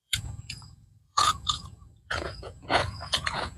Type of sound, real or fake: fake